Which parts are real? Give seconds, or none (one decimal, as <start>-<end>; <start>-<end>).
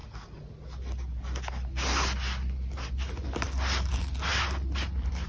0.0-5.3